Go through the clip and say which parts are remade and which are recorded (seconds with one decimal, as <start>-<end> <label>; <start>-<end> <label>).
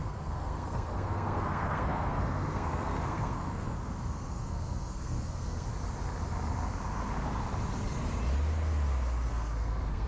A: 0.0-5.7 remade; 5.7-9.3 recorded; 9.3-10.1 remade